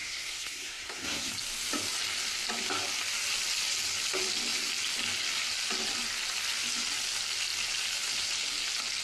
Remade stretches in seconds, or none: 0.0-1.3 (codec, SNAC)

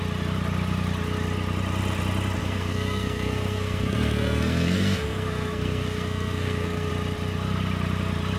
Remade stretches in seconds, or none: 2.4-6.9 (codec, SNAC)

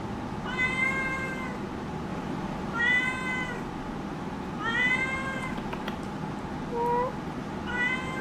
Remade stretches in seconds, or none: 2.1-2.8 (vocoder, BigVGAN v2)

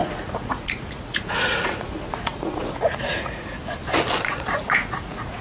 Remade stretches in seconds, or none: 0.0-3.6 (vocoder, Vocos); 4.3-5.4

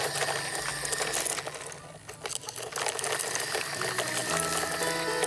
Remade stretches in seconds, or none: none

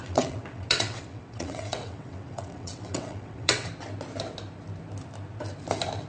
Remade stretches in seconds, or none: 0.0-3.7 (vocoder, WaveNeXt)

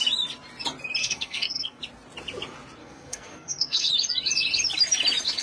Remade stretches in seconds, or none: 1.0-1.8 (codec, SNAC); 2.8-3.9